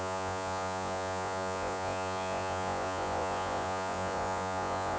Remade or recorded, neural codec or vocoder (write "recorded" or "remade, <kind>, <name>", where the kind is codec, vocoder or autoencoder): remade, vocoder, Vocos